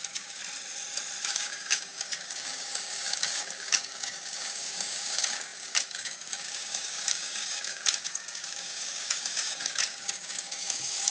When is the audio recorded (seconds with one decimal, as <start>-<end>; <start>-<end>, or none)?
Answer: 0.4-1.2